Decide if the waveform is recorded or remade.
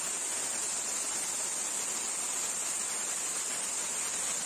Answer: recorded